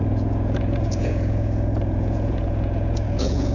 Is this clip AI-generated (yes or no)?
yes